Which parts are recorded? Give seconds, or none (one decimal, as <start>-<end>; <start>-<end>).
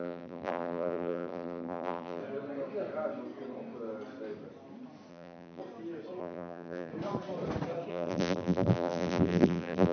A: 2.2-5.1; 5.6-6.2; 6.9-7.9